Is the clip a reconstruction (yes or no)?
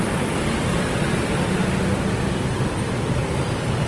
no